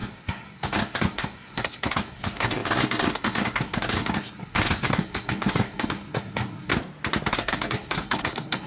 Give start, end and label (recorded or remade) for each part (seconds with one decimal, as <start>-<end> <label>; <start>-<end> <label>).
0.0-6.7 remade; 6.7-7.3 recorded; 7.3-8.7 remade